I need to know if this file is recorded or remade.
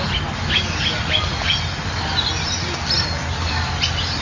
recorded